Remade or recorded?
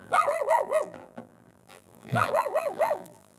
remade